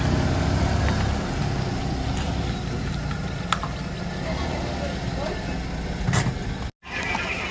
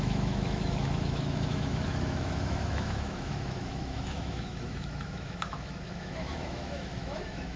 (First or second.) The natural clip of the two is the first